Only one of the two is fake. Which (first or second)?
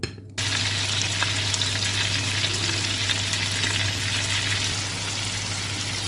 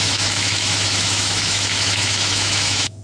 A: second